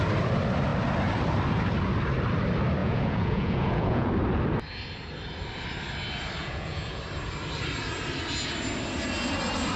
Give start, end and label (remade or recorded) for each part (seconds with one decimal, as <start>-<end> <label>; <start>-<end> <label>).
0.0-2.8 recorded; 2.8-4.1 remade; 4.1-6.4 recorded; 6.4-7.0 remade; 7.0-9.8 recorded